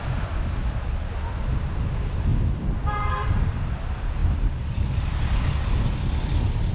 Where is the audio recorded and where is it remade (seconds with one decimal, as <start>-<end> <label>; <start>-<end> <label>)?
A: 0.0-2.3 remade; 2.3-3.1 recorded; 3.1-6.7 remade